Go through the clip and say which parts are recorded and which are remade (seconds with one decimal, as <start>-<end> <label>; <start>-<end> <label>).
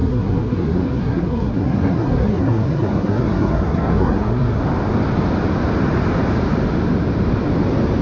0.0-4.6 remade; 4.6-8.0 recorded